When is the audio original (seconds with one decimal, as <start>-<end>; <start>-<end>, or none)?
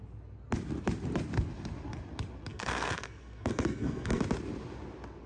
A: 0.0-2.5; 4.2-5.3